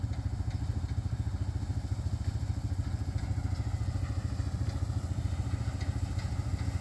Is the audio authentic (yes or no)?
yes